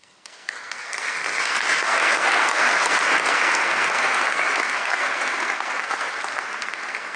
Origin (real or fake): fake